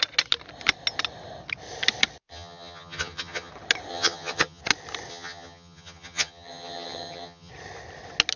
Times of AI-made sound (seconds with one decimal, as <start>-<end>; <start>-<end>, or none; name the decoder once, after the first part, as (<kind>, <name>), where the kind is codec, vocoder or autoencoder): 2.3-3.5 (vocoder, HiFi-GAN); 3.9-4.6; 5.1-7.5